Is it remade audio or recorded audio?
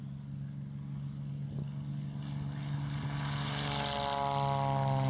recorded